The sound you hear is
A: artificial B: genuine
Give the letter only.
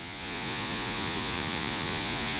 A